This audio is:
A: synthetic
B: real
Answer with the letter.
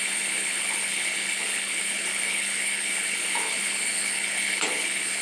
A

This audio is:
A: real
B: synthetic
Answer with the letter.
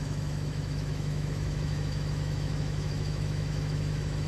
B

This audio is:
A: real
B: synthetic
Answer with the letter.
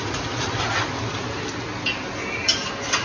A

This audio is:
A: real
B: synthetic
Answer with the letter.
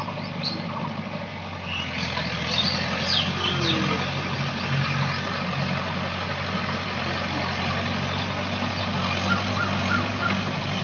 A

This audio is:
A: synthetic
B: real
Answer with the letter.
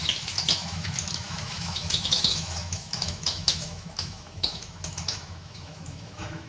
A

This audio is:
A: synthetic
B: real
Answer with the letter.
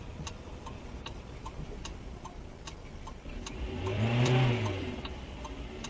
A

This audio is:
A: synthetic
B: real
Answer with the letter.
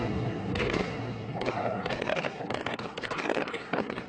A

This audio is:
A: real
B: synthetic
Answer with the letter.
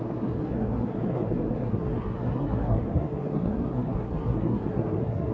B